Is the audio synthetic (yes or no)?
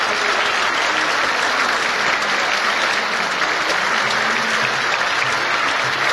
no